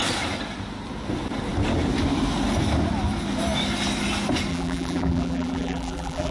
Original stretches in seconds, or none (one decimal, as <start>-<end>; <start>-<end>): 0.0-4.5